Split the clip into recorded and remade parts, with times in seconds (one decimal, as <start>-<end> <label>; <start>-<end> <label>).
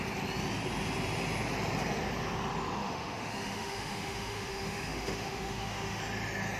0.0-2.8 recorded; 2.8-6.0 remade; 6.0-6.6 recorded